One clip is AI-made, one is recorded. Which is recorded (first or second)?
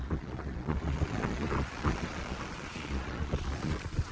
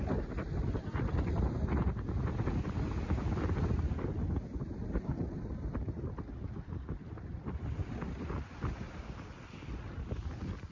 second